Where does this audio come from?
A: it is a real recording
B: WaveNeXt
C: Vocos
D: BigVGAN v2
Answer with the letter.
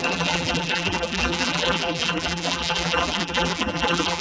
D